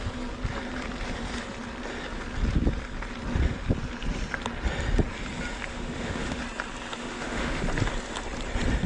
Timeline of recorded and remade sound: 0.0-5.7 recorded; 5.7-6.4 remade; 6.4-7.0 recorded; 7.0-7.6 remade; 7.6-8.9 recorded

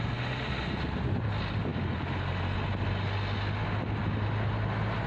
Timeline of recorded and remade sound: 0.0-5.1 recorded

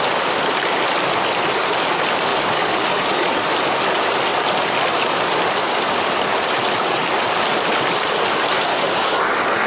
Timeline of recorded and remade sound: 0.0-2.3 recorded; 2.3-3.4 remade; 3.4-8.7 recorded; 8.7-9.7 remade

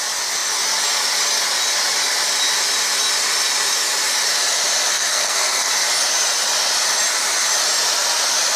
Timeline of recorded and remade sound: 0.0-4.9 recorded; 4.9-5.7 remade; 5.7-8.6 recorded

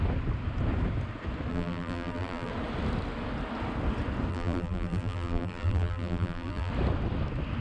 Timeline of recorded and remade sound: 0.0-1.5 recorded; 1.5-2.5 remade; 2.5-4.3 recorded; 4.3-6.7 remade; 6.7-7.6 recorded

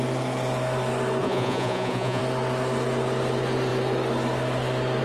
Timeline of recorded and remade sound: 0.0-1.2 recorded; 1.2-2.2 remade; 2.2-5.0 recorded

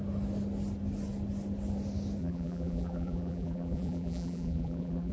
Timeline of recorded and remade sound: 0.0-2.2 recorded; 2.2-5.1 remade